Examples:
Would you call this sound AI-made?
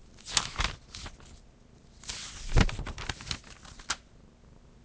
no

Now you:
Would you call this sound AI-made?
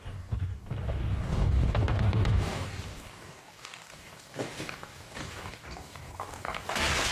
yes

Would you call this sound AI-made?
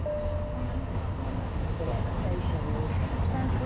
no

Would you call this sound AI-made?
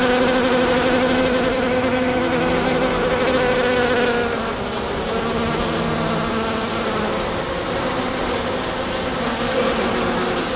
no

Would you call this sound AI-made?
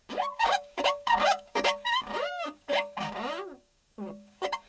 yes